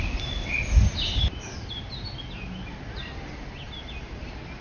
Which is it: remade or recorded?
recorded